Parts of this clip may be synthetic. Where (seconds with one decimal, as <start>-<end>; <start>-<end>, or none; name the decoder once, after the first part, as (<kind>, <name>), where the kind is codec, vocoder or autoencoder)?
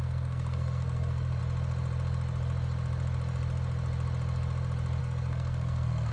0.0-1.4 (codec, SNAC); 5.0-6.1